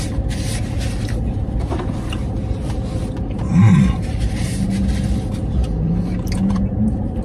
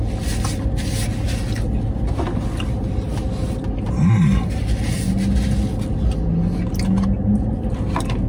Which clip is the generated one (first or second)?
first